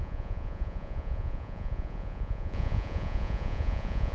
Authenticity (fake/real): fake